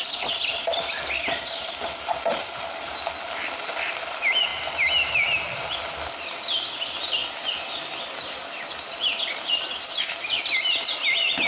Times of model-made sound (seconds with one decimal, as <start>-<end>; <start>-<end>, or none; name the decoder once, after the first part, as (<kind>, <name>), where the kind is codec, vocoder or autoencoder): none